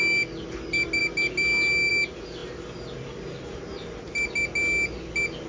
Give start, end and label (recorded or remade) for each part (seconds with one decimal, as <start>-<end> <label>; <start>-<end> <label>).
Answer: 0.0-5.5 recorded